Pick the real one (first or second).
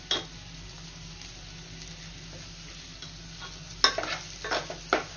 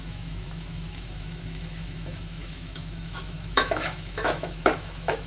first